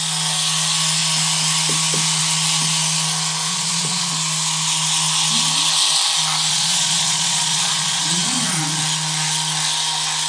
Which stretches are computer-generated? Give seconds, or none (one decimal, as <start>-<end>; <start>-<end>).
3.5-4.1; 6.5-8.6